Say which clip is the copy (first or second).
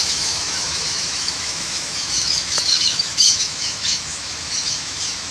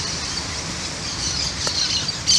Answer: first